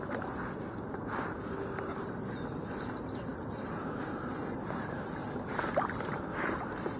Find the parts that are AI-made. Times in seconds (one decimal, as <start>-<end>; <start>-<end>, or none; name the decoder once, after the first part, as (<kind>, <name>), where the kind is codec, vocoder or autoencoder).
none